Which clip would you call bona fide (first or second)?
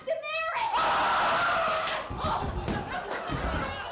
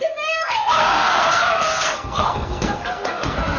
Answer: first